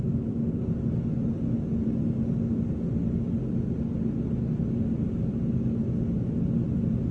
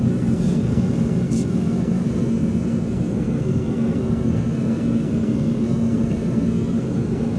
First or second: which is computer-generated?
second